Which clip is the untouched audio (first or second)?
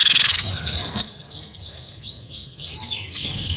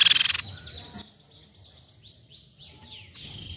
second